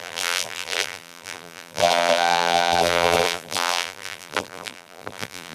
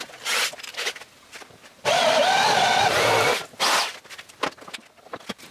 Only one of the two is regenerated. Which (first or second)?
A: first